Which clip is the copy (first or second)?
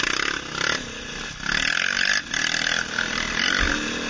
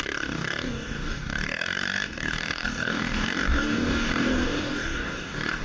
second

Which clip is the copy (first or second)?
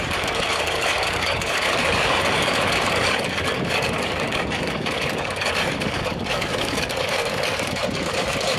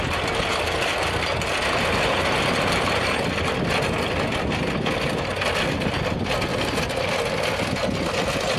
first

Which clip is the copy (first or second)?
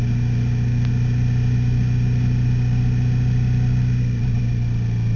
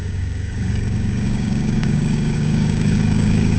second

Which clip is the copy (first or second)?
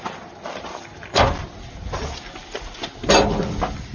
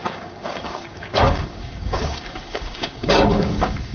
second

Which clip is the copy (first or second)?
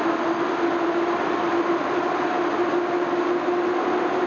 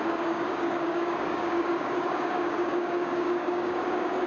second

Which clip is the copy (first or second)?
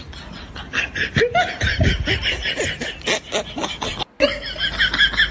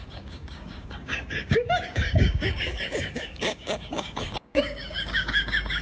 second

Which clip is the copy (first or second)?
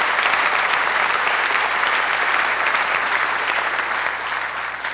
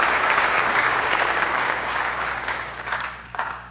second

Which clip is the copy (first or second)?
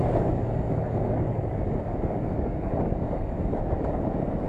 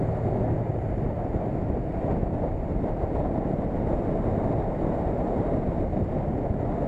first